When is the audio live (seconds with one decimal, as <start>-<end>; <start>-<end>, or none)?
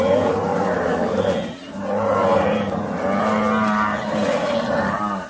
0.0-5.3